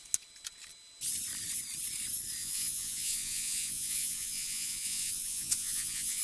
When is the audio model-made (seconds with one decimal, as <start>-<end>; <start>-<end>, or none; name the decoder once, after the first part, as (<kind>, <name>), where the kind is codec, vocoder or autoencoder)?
2.4-6.2 (vocoder, Vocos)